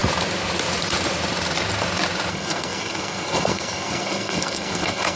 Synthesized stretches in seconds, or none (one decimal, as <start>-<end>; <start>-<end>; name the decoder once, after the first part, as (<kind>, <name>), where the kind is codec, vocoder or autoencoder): 2.3-5.2 (codec, SNAC)